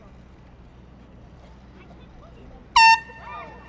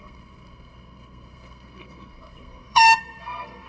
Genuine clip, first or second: first